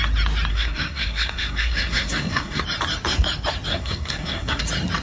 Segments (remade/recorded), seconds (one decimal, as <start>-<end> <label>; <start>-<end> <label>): 0.0-0.5 recorded; 0.5-2.6 remade; 2.6-3.7 recorded; 3.7-4.6 remade; 4.6-5.0 recorded